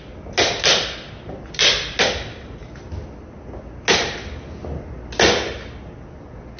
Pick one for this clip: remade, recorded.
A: recorded